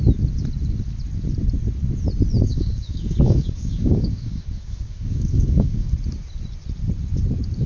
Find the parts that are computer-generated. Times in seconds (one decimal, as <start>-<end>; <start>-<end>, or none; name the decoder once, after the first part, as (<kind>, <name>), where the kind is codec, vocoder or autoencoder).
2.5-5.9 (codec, DAC)